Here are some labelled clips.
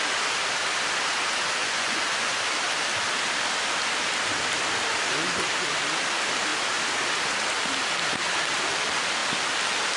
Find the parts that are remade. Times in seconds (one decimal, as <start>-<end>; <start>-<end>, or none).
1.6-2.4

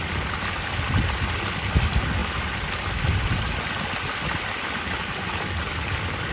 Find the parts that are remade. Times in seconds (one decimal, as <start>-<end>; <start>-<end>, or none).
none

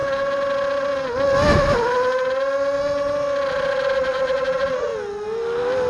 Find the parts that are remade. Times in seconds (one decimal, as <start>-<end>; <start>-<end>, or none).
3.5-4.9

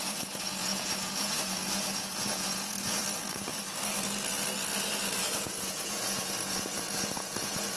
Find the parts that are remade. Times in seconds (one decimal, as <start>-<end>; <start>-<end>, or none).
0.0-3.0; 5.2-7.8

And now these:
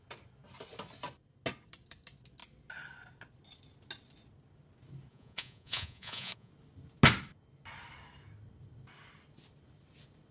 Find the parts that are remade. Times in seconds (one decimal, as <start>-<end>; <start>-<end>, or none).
5.1-6.5